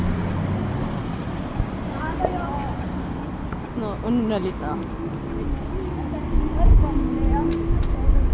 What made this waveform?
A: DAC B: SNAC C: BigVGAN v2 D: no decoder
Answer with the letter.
D